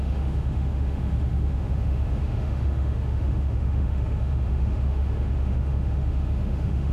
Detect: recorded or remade remade